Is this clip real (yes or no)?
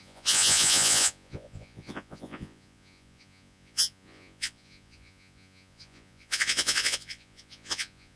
no